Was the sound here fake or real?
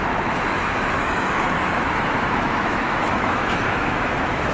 fake